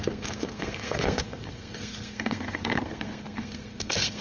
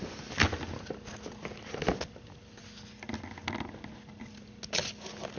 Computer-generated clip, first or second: first